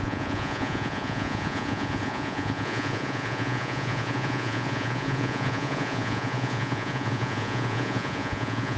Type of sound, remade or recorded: remade